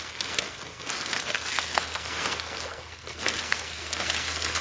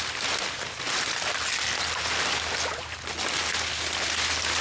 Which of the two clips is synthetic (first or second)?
first